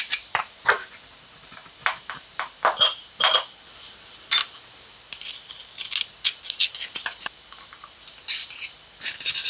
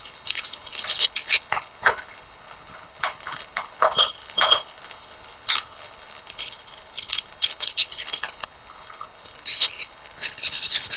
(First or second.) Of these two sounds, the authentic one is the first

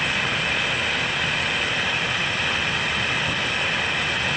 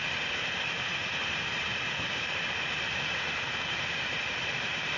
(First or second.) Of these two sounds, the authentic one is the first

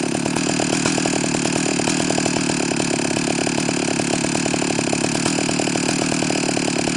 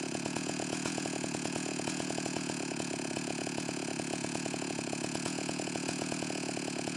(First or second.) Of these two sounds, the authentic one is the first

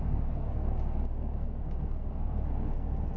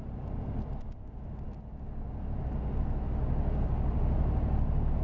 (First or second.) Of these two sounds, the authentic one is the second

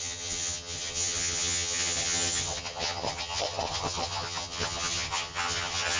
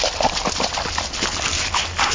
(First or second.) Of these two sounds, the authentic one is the second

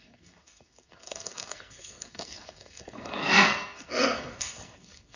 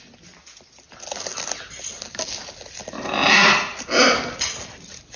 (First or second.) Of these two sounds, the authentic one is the second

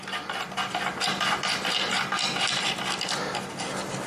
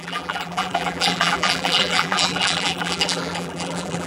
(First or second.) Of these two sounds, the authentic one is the first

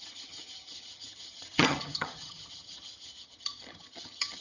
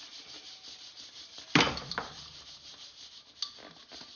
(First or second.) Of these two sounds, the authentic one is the second